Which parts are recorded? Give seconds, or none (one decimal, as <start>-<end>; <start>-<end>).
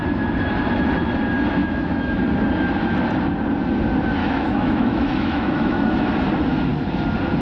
0.0-1.6; 2.2-4.2; 6.1-7.4